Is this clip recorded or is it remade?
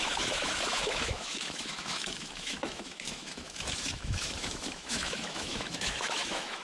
remade